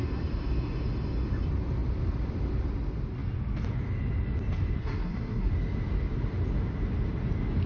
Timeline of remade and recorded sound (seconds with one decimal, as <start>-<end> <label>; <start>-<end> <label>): 0.0-4.8 recorded; 4.8-5.5 remade; 5.5-7.7 recorded